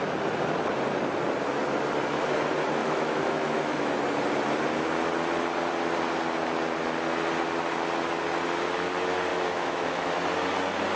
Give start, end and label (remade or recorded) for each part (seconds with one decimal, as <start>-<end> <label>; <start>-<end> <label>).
0.0-2.8 recorded; 2.8-3.9 remade; 3.9-9.3 recorded; 9.3-10.1 remade; 10.1-11.0 recorded